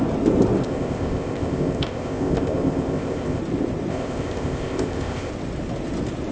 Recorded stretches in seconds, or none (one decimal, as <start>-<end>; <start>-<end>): 0.0-0.6; 3.4-3.9; 5.3-6.3